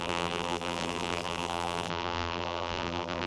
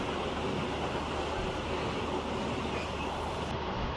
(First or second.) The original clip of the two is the second